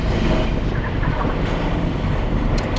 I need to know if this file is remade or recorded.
recorded